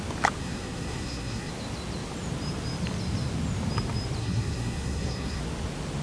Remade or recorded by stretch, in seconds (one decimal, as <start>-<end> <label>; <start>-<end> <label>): 0.0-0.4 recorded; 0.4-1.5 remade; 1.5-4.2 recorded; 4.2-5.4 remade; 5.4-6.0 recorded